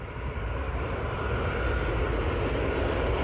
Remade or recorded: recorded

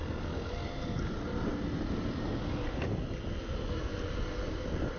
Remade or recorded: recorded